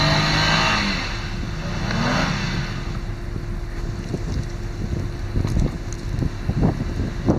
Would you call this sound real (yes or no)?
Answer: yes